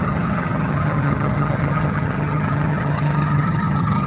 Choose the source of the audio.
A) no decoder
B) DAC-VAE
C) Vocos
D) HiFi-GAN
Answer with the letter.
D